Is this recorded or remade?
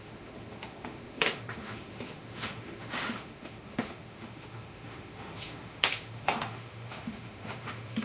remade